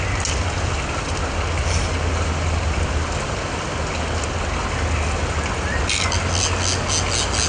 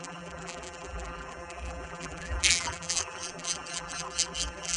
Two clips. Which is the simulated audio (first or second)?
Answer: second